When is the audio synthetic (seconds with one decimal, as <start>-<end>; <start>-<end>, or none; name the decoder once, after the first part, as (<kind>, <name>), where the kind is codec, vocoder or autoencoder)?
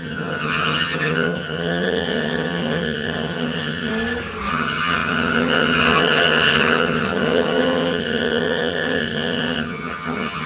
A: 0.0-3.9 (vocoder, HiFi-GAN); 4.5-10.5